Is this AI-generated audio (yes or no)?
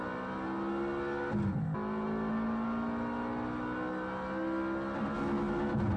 no